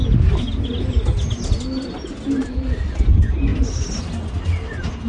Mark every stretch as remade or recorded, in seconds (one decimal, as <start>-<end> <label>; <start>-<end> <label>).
0.0-5.1 recorded